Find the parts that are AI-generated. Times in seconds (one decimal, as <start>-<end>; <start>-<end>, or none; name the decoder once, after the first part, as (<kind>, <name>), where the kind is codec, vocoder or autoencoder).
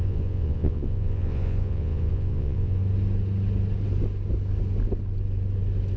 0.0-2.8 (vocoder, Vocos)